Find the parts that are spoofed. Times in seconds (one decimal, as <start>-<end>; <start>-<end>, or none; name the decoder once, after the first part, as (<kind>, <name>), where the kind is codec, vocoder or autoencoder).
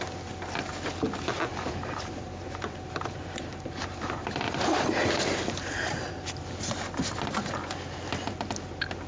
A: 1.5-6.1 (vocoder, BigVGAN v2)